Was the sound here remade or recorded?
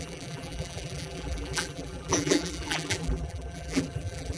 remade